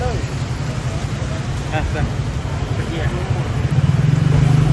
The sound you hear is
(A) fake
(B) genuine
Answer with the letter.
B